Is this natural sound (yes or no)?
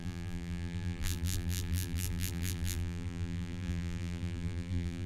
no